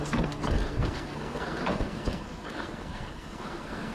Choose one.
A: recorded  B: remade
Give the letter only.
B